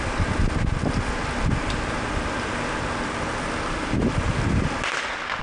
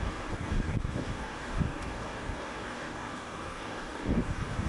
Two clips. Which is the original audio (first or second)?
first